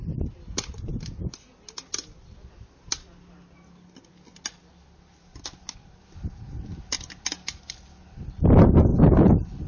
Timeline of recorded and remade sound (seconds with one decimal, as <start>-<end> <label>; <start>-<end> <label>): 0.0-9.7 recorded

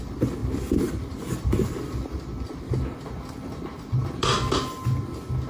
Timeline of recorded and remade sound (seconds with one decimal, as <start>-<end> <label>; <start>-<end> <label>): 0.0-5.5 recorded

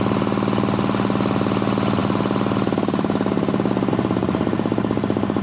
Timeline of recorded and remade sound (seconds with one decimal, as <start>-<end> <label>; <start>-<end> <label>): 0.0-5.4 recorded

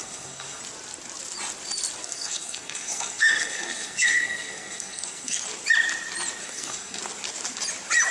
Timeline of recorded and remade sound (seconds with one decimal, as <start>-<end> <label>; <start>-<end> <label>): 0.0-0.6 remade; 0.6-2.0 recorded; 2.0-5.4 remade; 5.4-6.4 recorded; 6.4-7.0 remade; 7.0-8.1 recorded

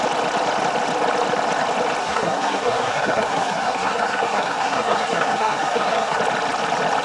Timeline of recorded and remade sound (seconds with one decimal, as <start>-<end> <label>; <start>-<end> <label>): 0.0-2.0 recorded; 2.0-6.2 remade; 6.2-7.0 recorded

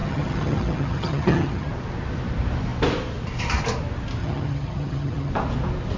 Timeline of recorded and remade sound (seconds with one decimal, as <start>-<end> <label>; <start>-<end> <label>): 0.0-1.7 remade; 1.7-4.2 recorded; 4.2-5.3 remade; 5.3-6.0 recorded